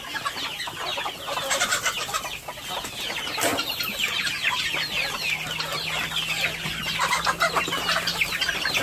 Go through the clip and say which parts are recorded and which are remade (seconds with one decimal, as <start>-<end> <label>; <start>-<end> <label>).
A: 0.0-3.5 recorded; 3.5-4.6 remade; 4.6-8.8 recorded